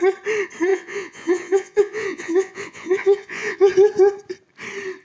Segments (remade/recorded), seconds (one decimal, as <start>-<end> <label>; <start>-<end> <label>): 0.0-0.7 recorded; 0.7-3.7 remade; 3.7-5.0 recorded